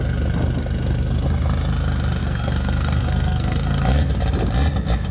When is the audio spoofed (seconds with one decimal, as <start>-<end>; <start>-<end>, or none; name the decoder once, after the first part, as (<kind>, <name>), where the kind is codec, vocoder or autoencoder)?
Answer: 2.2-4.1 (codec, SNAC)